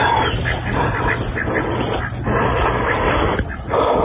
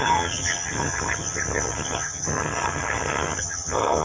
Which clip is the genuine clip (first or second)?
first